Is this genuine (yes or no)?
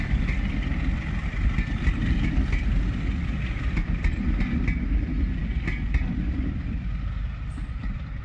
yes